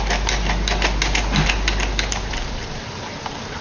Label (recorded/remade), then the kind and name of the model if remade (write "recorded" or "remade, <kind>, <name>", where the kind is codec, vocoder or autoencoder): recorded